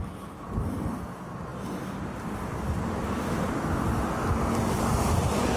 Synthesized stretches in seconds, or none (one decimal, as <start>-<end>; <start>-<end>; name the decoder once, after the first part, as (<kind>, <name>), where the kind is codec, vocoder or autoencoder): none